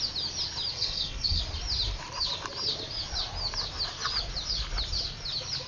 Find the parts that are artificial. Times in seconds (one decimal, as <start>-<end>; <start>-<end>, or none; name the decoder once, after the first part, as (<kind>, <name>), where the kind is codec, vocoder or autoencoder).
0.7-1.4 (codec, SNAC)